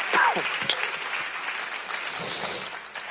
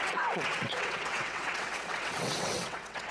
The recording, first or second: first